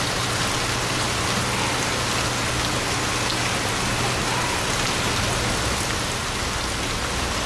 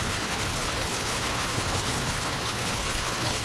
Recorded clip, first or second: first